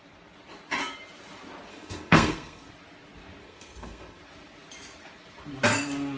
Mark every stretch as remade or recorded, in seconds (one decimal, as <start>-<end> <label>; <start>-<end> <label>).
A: 0.0-1.7 recorded; 1.7-2.7 remade; 2.7-3.4 recorded; 3.4-4.2 remade; 4.2-6.2 recorded